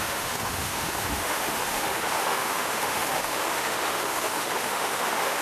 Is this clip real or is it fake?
fake